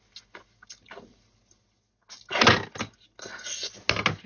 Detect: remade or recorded recorded